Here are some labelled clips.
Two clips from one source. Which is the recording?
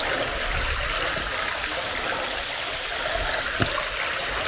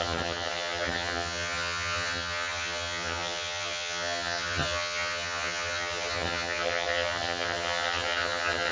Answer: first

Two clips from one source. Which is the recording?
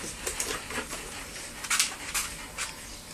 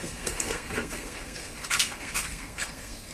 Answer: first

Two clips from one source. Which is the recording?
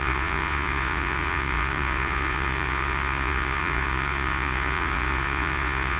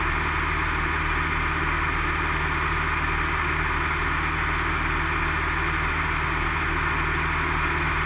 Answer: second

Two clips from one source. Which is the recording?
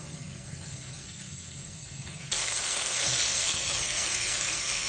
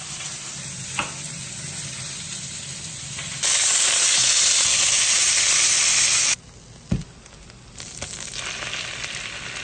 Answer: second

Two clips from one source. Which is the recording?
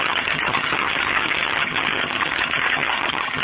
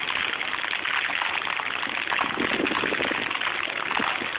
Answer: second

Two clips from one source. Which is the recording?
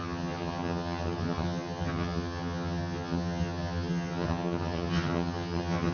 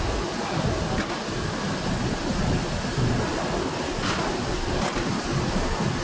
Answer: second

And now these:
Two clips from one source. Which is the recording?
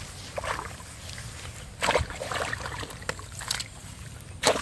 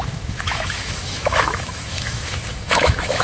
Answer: first